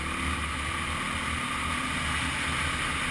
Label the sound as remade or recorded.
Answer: recorded